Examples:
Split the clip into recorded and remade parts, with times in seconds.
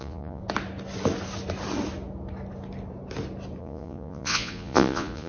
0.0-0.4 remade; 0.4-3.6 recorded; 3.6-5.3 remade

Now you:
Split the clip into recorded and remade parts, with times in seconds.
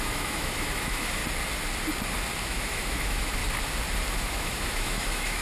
0.0-1.2 remade; 1.2-2.4 recorded; 2.4-3.4 remade; 3.4-4.1 recorded; 4.1-5.4 remade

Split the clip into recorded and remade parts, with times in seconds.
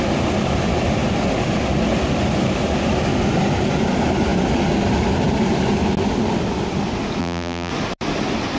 0.0-7.2 recorded; 7.2-7.7 remade; 7.7-8.6 recorded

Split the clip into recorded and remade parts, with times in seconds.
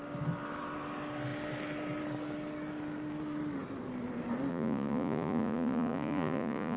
0.0-4.5 recorded; 4.5-6.8 remade